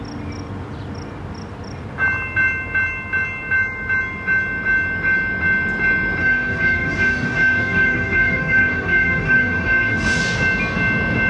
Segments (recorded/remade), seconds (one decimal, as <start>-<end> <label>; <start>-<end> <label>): 0.0-6.2 recorded; 6.2-10.2 remade; 10.2-11.3 recorded